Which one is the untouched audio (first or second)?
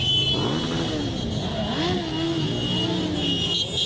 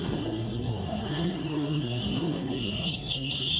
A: first